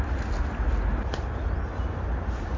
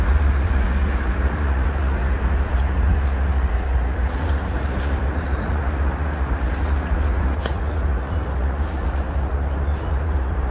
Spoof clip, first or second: second